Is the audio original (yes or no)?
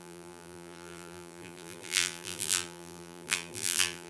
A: no